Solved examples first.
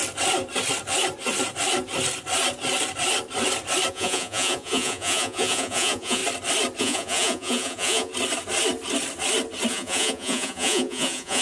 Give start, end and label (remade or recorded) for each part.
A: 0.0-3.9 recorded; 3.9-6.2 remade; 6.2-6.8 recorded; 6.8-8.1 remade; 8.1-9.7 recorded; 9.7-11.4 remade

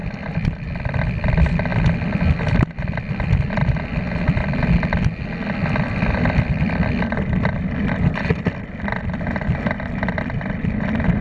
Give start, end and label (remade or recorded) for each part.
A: 0.0-11.2 recorded

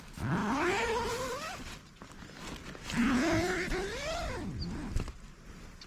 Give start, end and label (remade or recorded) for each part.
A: 0.0-3.0 recorded; 3.0-3.5 remade; 3.5-5.9 recorded

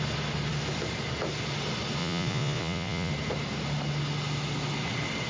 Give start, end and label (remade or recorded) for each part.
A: 0.0-2.0 recorded; 2.0-3.1 remade; 3.1-5.3 recorded